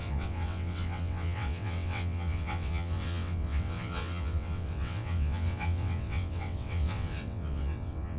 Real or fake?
fake